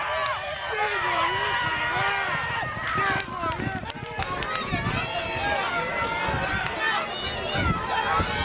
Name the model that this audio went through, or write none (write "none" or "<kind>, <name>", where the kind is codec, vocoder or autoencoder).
none